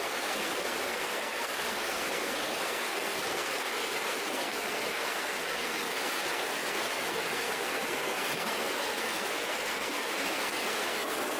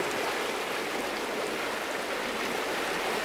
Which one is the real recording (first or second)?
second